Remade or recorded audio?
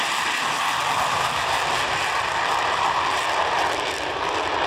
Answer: remade